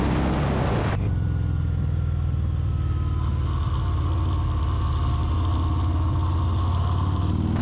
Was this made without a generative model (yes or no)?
yes